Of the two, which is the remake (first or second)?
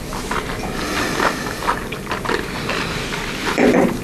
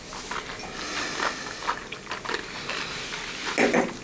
first